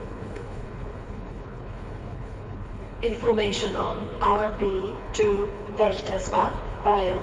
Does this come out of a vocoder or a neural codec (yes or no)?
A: yes